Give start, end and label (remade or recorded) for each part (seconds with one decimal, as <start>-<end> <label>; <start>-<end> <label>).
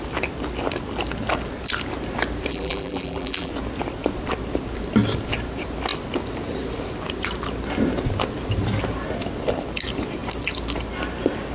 0.0-2.5 recorded; 2.5-3.5 remade; 3.5-11.5 recorded